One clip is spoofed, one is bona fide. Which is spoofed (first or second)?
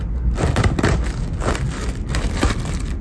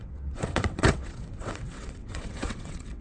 second